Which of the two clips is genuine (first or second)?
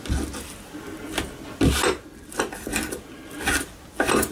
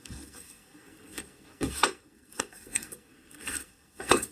first